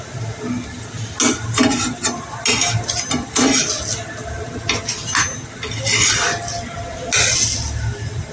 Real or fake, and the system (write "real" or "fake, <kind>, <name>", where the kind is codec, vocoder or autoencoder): real